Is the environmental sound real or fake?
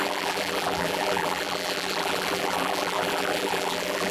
fake